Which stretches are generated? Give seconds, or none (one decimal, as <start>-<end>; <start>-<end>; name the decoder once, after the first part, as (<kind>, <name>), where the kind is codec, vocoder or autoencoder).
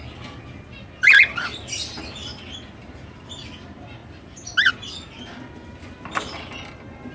none